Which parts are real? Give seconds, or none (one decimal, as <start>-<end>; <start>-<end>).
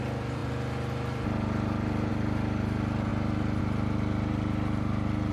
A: 3.1-3.6